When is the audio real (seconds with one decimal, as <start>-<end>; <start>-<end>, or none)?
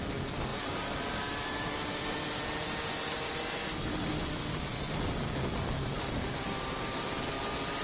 0.0-0.5; 2.4-3.9; 4.4-5.5; 6.8-7.8